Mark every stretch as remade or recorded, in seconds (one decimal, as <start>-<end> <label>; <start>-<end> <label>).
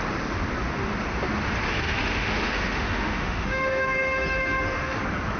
0.0-1.8 recorded; 1.8-5.0 remade; 5.0-5.4 recorded